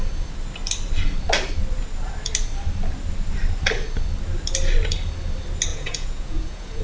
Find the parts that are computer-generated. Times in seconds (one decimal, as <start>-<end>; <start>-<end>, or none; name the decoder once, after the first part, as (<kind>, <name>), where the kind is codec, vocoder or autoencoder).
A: 5.7-6.8 (vocoder, Vocos)